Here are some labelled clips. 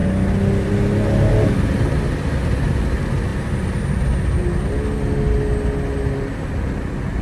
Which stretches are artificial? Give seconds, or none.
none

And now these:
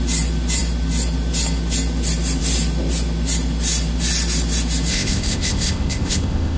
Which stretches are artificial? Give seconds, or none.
4.9-6.6

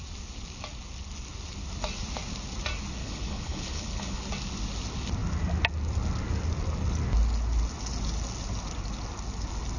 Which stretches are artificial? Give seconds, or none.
3.0-4.2

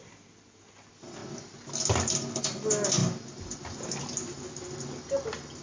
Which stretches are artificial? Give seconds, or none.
0.0-1.2; 2.4-3.0